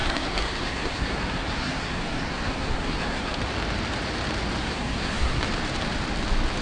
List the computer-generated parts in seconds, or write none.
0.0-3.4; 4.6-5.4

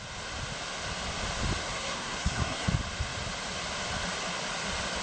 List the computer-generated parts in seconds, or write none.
1.6-2.7

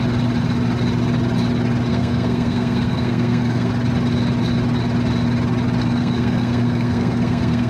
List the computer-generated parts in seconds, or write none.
1.9-3.7; 5.8-7.7

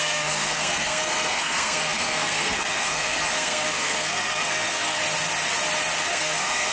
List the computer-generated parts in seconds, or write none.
0.0-5.0; 6.0-6.7